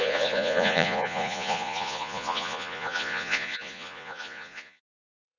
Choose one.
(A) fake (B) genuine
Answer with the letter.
A